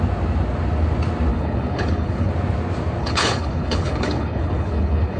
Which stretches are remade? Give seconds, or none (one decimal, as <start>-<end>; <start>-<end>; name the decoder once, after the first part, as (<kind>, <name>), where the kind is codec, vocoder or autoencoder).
1.3-2.3 (codec, HILCodec); 3.0-5.2